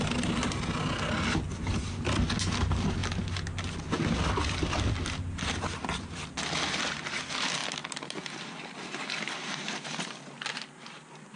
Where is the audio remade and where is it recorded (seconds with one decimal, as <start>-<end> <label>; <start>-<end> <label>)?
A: 0.0-11.4 recorded